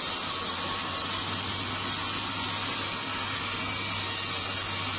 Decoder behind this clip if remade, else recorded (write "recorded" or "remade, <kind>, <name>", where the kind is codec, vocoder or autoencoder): recorded